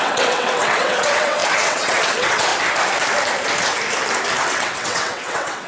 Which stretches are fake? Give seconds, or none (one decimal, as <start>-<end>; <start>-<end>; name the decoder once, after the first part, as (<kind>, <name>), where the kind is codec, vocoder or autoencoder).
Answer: 0.0-2.5 (vocoder, WaveNeXt); 4.5-5.7